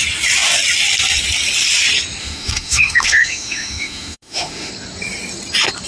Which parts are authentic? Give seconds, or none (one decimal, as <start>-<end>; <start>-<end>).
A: 0.0-2.2; 4.7-5.9